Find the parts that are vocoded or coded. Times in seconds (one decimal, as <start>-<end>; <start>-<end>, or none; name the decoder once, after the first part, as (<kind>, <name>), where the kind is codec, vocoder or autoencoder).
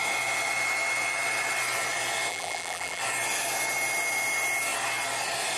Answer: 2.3-3.0 (vocoder, BigVGAN v2)